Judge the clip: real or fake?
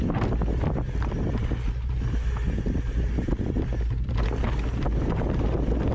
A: real